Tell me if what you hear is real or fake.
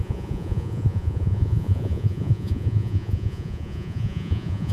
fake